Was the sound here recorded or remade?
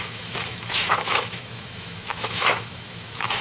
remade